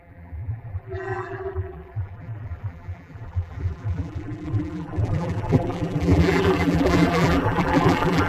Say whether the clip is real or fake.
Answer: fake